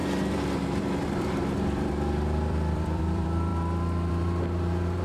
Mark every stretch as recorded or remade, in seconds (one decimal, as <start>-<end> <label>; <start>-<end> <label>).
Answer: 0.0-3.5 remade; 3.5-4.1 recorded; 4.1-5.0 remade